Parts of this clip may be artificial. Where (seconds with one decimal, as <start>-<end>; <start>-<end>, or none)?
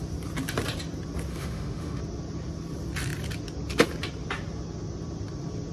1.3-2.0